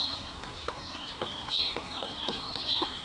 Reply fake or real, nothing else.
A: fake